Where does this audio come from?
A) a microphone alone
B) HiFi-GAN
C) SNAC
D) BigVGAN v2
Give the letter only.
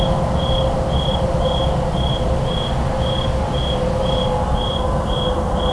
A